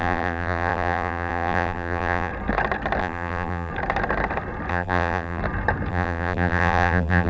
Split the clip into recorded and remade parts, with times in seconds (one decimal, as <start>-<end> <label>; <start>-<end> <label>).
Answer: 0.0-2.3 remade; 2.3-3.0 recorded; 3.0-3.7 remade; 3.7-4.7 recorded; 4.7-5.4 remade; 5.4-5.9 recorded; 5.9-7.3 remade